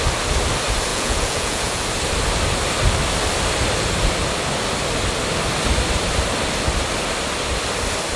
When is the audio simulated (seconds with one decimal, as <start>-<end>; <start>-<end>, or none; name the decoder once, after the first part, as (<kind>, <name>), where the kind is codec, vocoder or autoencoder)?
0.9-1.8 (vocoder, Vocos)

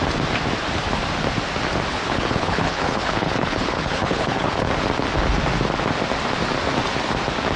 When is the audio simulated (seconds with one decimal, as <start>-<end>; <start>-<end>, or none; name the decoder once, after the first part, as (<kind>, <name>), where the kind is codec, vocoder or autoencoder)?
1.9-4.5 (codec, HILCodec)

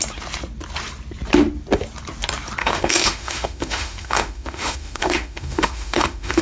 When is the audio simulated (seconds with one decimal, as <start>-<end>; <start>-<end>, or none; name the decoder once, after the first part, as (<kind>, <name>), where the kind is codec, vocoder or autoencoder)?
2.6-6.4 (autoencoder, DAC-VAE)